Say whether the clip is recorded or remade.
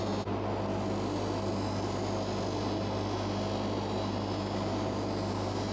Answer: recorded